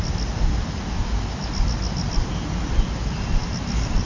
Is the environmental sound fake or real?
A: real